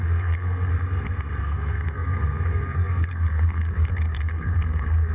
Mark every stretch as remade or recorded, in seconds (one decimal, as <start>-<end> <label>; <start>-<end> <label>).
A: 0.0-0.7 remade; 0.7-1.4 recorded; 1.4-5.1 remade